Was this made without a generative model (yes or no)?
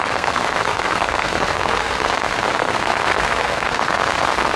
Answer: no